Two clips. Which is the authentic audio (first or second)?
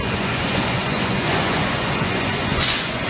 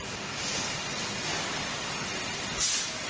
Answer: second